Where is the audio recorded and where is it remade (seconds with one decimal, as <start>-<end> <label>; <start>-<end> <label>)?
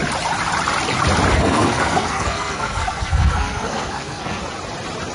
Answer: 0.0-1.3 recorded; 1.3-4.4 remade; 4.4-5.1 recorded